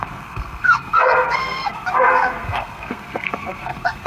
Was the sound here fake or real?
fake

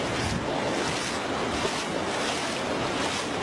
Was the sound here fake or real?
real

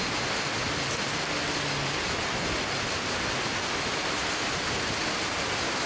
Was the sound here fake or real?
real